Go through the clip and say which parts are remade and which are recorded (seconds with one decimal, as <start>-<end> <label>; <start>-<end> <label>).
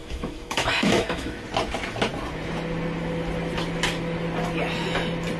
0.0-1.4 remade; 1.4-5.4 recorded